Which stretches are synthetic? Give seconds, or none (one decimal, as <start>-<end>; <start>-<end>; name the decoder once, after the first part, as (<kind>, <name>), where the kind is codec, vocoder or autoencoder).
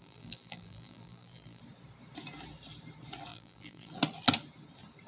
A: 0.0-1.6 (vocoder, BigVGAN v2); 3.3-3.9